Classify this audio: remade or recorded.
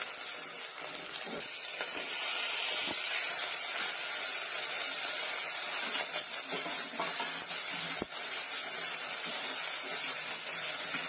recorded